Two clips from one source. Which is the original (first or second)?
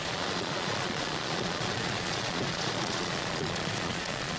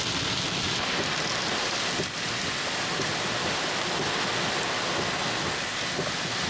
second